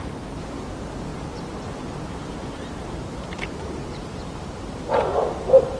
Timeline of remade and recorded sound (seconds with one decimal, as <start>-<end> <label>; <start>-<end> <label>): 0.0-1.1 recorded; 1.1-4.6 remade; 4.6-5.8 recorded